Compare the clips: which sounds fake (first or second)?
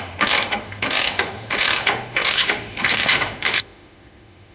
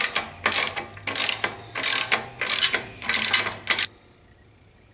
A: first